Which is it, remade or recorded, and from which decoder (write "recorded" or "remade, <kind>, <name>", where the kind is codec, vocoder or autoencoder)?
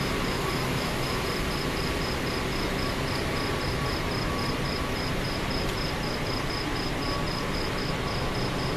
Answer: recorded